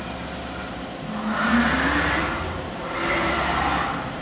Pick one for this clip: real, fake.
real